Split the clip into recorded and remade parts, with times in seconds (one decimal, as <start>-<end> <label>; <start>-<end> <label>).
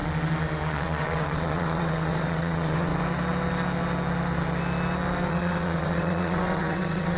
0.0-0.7 recorded; 0.7-2.9 remade; 2.9-5.3 recorded; 5.3-7.2 remade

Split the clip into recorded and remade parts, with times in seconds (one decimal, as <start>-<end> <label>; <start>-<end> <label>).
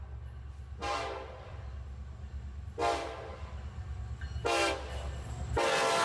0.0-6.0 recorded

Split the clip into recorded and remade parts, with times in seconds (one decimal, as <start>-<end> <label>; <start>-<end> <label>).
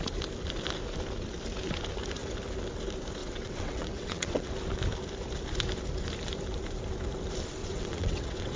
0.0-3.2 recorded; 3.2-4.5 remade; 4.5-7.6 recorded; 7.6-8.6 remade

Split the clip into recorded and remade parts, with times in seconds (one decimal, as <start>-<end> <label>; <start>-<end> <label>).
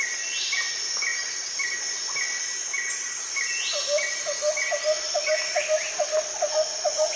0.0-7.2 recorded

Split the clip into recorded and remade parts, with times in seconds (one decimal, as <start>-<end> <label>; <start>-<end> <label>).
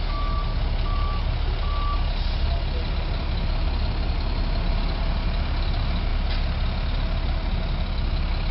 0.0-8.5 recorded